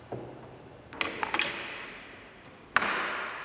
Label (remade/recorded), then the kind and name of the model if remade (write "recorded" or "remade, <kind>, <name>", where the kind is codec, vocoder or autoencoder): recorded